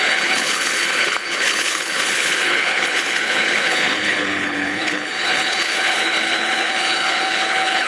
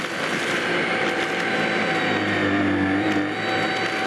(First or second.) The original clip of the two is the second